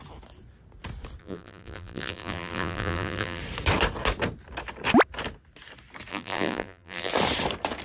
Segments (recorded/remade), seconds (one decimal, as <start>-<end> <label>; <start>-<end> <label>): 0.0-1.2 recorded; 1.2-3.4 remade; 3.4-6.1 recorded; 6.1-7.1 remade; 7.1-7.8 recorded

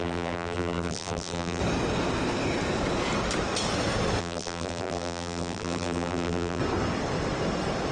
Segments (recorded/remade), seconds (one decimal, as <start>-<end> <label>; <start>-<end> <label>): 0.0-1.6 remade; 1.6-4.2 recorded; 4.2-6.6 remade; 6.6-7.9 recorded

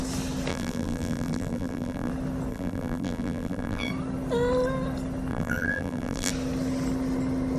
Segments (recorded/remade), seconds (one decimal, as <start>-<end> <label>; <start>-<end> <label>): 0.0-0.5 recorded; 0.5-2.1 remade; 2.1-2.5 recorded; 2.5-3.9 remade; 3.9-5.3 recorded; 5.3-6.3 remade; 6.3-7.6 recorded